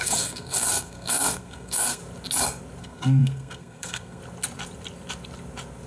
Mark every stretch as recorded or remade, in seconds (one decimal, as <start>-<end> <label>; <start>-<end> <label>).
0.0-2.0 remade; 2.0-2.8 recorded; 2.8-4.2 remade; 4.2-5.9 recorded